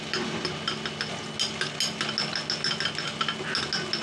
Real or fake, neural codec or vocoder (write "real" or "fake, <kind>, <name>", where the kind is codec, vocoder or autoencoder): real